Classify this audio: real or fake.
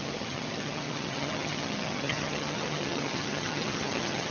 fake